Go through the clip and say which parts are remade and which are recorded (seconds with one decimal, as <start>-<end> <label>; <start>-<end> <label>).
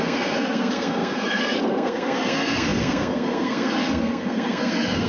0.0-5.1 remade